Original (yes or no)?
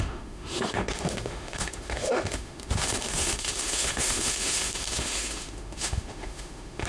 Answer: no